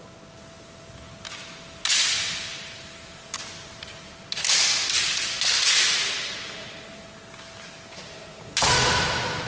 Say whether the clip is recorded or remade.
recorded